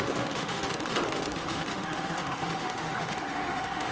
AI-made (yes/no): yes